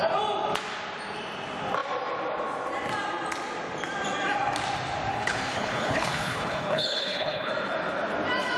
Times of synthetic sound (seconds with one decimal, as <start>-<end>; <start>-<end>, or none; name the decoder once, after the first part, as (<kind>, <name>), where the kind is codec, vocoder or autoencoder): 5.1-7.5 (codec, HILCodec)